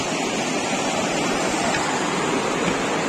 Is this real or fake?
real